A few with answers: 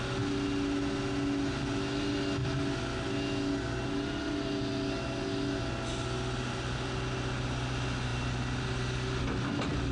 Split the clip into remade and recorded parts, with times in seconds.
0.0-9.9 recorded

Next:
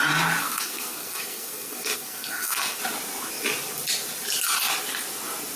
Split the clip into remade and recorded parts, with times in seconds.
0.0-0.4 recorded; 0.4-2.8 remade; 2.8-5.6 recorded

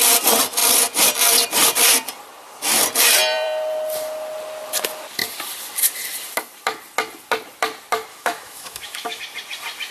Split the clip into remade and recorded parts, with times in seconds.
0.0-8.1 recorded; 8.1-9.2 remade; 9.2-9.9 recorded

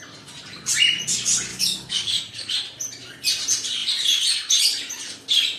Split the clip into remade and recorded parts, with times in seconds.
0.0-1.5 recorded; 1.5-2.5 remade; 2.5-5.6 recorded

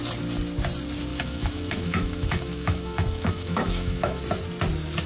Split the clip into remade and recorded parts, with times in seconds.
0.0-1.1 recorded; 1.1-4.2 remade; 4.2-5.1 recorded

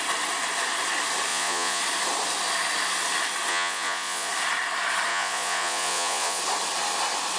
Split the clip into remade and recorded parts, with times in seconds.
0.0-1.3 recorded; 1.3-1.8 remade; 1.8-3.5 recorded; 3.5-4.3 remade; 4.3-5.1 recorded; 5.1-6.4 remade; 6.4-7.4 recorded

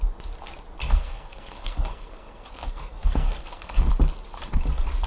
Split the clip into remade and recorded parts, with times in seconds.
0.0-0.8 recorded; 0.8-3.9 remade; 3.9-5.1 recorded

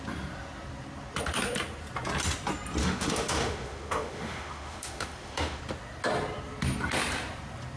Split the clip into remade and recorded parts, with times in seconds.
0.0-2.8 recorded; 2.8-5.6 remade; 5.6-7.8 recorded